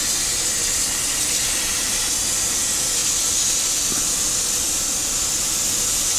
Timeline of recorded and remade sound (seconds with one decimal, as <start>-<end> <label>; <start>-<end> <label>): 0.0-6.2 recorded